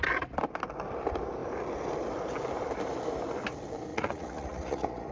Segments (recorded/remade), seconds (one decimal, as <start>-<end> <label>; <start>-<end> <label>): 0.0-3.9 recorded; 3.9-5.1 remade

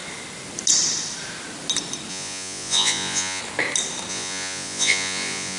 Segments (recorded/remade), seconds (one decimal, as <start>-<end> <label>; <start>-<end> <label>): 0.0-2.1 recorded; 2.1-3.4 remade; 3.4-4.1 recorded; 4.1-5.6 remade

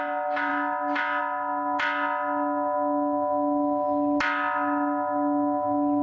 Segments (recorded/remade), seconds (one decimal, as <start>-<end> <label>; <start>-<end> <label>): 0.0-6.0 recorded

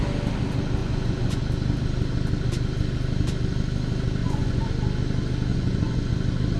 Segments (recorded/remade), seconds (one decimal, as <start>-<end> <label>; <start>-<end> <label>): 0.0-0.8 recorded; 0.8-1.4 remade; 1.4-4.2 recorded; 4.2-4.7 remade; 4.7-5.5 recorded; 5.5-6.1 remade; 6.1-6.6 recorded

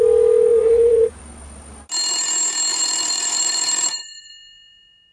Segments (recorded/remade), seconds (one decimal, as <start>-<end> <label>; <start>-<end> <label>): 0.0-0.5 recorded; 0.5-1.2 remade; 1.2-2.7 recorded; 2.7-4.3 remade; 4.3-5.1 recorded

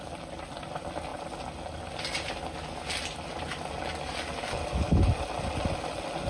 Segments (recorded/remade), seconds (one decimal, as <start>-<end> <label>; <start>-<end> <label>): 0.0-6.3 recorded